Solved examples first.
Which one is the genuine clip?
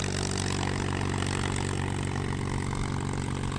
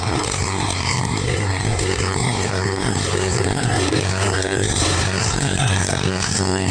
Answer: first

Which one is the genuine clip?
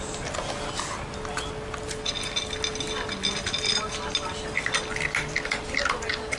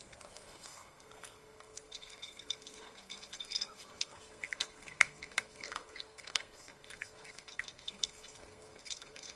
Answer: first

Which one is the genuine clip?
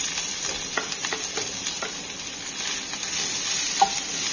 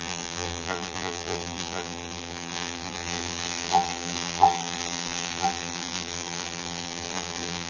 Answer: first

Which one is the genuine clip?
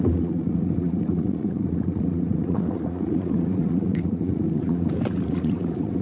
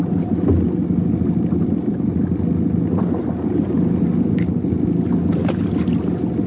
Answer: second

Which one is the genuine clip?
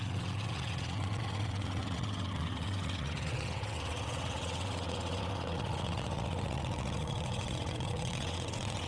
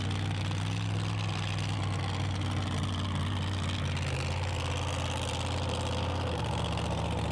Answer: second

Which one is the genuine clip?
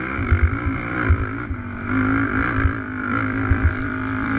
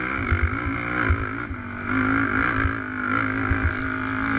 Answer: second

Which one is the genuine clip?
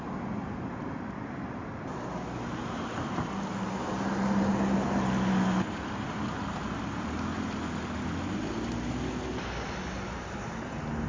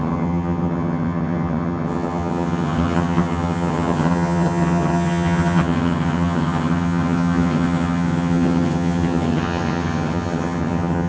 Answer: first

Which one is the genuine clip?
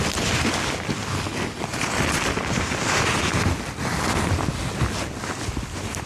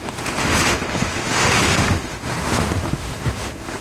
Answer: first